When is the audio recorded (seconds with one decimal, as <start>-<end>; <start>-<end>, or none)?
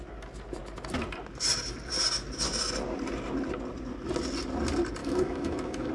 0.0-5.0